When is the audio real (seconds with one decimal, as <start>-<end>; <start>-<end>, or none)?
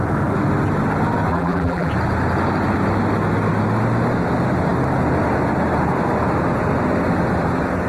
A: 0.0-1.3; 1.9-7.9